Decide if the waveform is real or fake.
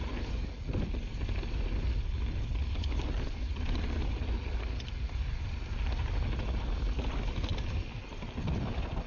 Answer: real